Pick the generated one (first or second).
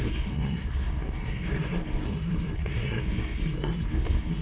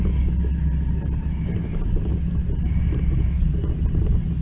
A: first